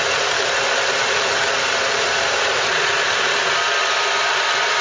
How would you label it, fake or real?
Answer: real